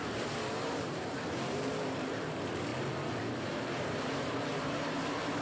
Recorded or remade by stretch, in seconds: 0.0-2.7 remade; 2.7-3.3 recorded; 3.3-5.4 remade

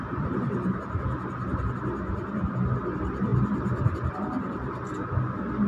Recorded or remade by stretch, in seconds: 0.0-5.7 recorded

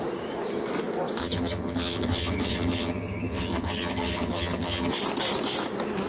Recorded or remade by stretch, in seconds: 0.0-1.2 recorded; 1.2-4.9 remade; 4.9-6.1 recorded

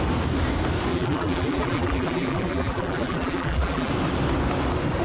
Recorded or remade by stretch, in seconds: 0.0-0.9 recorded; 0.9-3.9 remade; 3.9-5.0 recorded

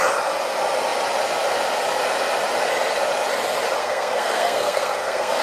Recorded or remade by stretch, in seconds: 0.0-3.8 recorded; 3.8-5.4 remade

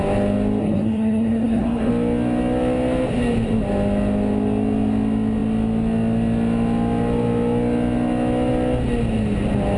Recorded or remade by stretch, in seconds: 0.0-0.6 recorded; 0.6-1.9 remade; 1.9-9.8 recorded

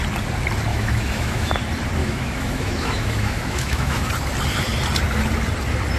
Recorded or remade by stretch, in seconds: 0.0-0.7 recorded; 0.7-1.5 remade; 1.5-2.0 recorded; 2.0-4.1 remade; 4.1-6.0 recorded